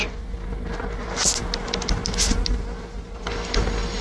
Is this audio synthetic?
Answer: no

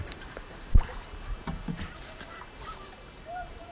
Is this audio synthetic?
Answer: yes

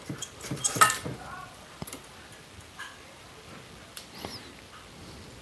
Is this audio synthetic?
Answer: yes